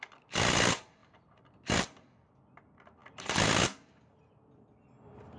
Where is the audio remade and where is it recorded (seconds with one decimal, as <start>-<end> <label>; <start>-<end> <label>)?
0.0-5.4 recorded